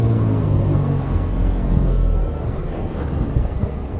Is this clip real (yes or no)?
no